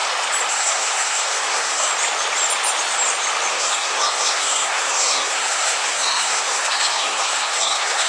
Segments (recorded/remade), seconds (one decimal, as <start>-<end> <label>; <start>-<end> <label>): 0.0-0.5 recorded; 0.5-1.9 remade; 1.9-3.5 recorded; 3.5-8.1 remade